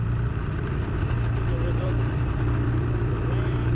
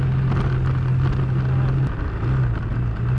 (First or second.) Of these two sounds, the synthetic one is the first